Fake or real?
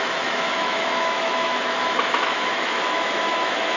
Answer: fake